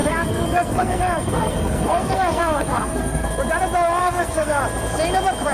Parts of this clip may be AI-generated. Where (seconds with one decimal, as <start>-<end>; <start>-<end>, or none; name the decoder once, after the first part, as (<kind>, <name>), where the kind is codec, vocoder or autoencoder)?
0.0-3.3 (codec, SNAC); 4.0-4.6